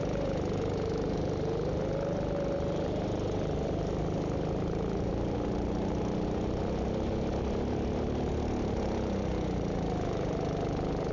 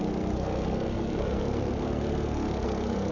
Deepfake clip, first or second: second